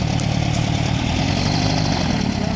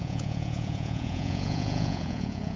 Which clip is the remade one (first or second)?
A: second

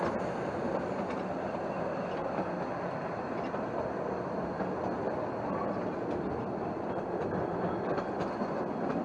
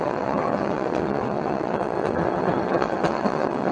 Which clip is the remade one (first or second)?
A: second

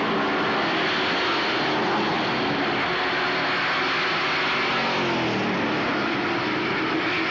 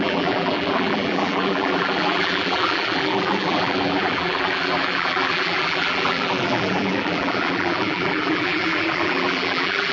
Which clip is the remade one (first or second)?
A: second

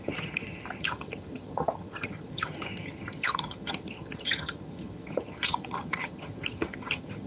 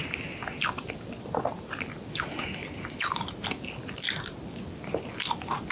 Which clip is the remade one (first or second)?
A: first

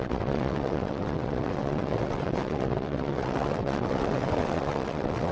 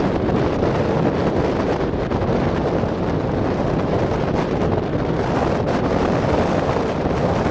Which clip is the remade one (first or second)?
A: first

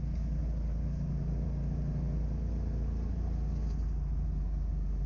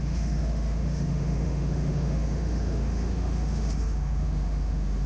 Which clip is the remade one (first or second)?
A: second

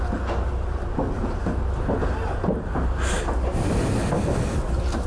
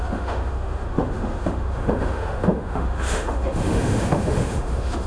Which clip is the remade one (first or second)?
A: second